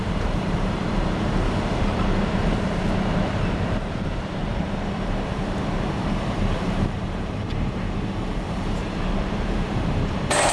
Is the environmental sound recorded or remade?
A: remade